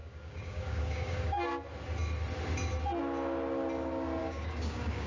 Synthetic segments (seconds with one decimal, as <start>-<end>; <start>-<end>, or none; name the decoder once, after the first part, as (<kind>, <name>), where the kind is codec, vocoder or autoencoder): 0.0-1.5 (codec, DAC); 4.2-5.1